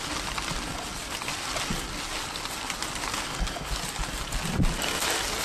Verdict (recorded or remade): recorded